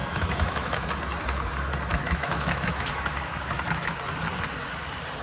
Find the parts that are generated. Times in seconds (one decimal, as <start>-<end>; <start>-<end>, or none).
0.0-0.9; 1.9-3.9

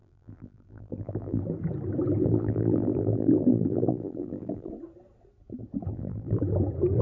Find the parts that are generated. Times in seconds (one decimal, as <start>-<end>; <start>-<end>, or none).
0.0-1.4; 2.2-4.7; 5.9-6.4

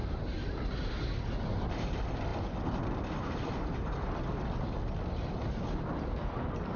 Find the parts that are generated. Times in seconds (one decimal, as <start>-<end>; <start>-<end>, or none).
none

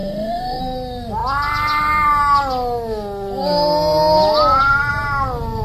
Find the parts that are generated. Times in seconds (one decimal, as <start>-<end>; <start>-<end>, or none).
0.0-0.6

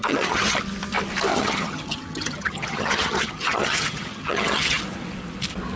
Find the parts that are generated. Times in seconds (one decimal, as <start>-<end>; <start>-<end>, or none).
0.0-0.6; 1.3-4.8